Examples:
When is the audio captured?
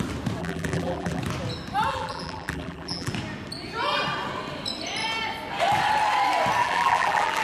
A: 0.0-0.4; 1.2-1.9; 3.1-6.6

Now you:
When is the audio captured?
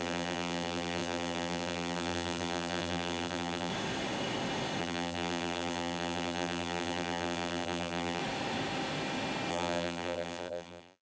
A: 3.7-4.8; 8.2-9.5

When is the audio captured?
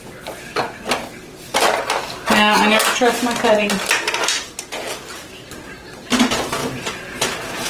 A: 0.0-6.6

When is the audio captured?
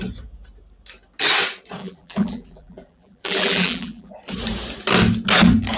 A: 0.0-1.8; 4.1-5.8